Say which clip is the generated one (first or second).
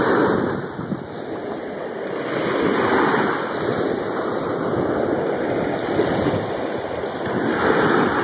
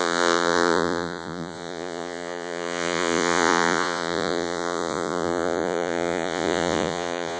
second